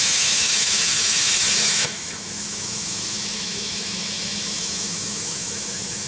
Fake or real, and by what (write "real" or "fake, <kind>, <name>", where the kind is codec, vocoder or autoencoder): fake, autoencoder, DAC-VAE